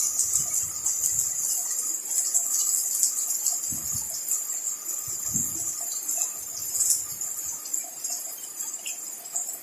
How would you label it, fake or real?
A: real